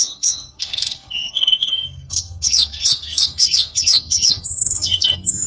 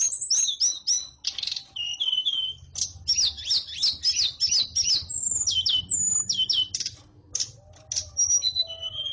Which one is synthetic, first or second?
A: first